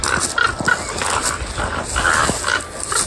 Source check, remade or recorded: recorded